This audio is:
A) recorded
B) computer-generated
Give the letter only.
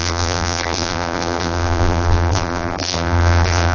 B